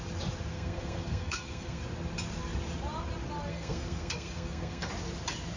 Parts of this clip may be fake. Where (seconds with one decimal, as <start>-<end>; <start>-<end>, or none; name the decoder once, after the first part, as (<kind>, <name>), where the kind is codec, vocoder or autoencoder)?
0.5-1.8 (codec, SNAC); 3.5-4.9